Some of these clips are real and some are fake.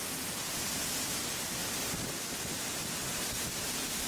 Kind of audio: fake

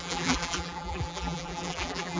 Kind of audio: fake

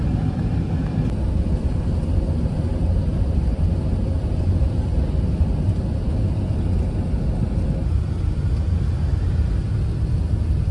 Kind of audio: real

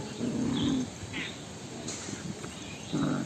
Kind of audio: fake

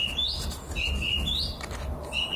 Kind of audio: real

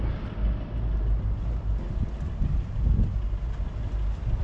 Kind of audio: real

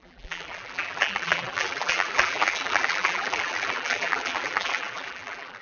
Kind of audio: fake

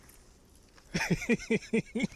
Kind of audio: real